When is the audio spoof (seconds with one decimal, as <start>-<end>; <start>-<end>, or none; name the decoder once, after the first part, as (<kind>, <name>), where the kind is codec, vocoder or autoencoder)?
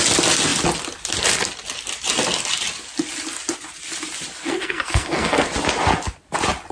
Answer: 4.4-5.5 (codec, SNAC)